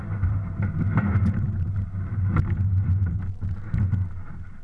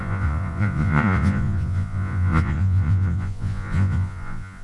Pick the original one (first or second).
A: first